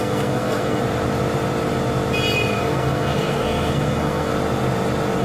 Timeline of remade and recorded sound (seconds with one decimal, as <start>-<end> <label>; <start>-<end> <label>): 0.0-0.8 remade; 0.8-2.5 recorded; 2.5-4.3 remade; 4.3-5.2 recorded

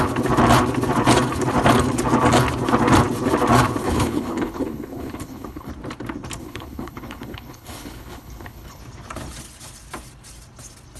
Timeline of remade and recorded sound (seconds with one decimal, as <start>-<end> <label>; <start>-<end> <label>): 0.0-3.8 recorded; 3.8-5.7 remade; 5.7-6.4 recorded; 6.4-8.8 remade; 8.8-11.0 recorded

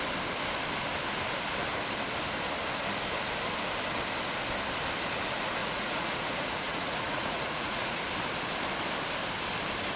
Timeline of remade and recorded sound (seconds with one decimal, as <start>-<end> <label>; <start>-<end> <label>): 0.0-5.6 recorded; 5.6-8.0 remade; 8.0-10.0 recorded

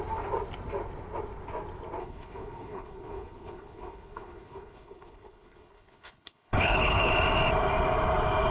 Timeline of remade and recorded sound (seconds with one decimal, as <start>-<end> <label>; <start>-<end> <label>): 0.0-2.0 recorded; 2.0-7.1 remade; 7.1-8.5 recorded

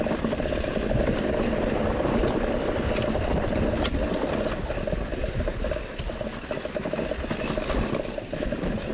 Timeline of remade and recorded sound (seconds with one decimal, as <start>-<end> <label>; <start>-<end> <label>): 0.0-8.9 recorded

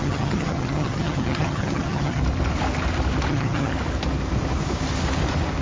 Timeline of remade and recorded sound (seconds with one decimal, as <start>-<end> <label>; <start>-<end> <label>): 0.0-2.2 remade; 2.2-3.3 recorded; 3.3-3.7 remade; 3.7-5.6 recorded

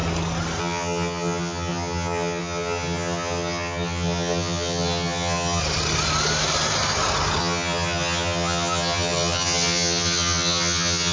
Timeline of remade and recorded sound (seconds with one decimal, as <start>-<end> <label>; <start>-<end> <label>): 0.0-0.6 recorded; 0.6-5.6 remade; 5.6-7.4 recorded; 7.4-11.1 remade